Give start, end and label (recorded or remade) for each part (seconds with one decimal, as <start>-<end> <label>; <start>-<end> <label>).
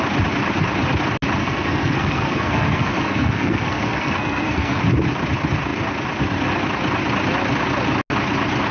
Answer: 0.0-1.4 recorded; 1.4-4.8 remade; 4.8-8.7 recorded